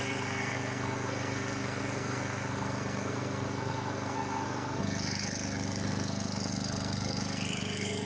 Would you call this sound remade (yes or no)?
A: yes